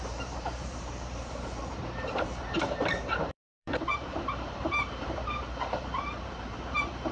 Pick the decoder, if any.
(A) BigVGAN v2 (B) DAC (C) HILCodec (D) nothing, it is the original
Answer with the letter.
A